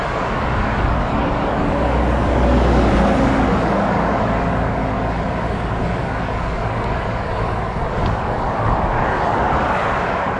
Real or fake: fake